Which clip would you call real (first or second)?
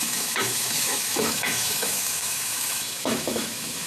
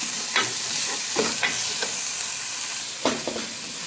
second